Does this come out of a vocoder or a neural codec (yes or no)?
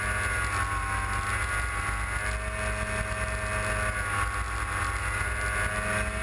no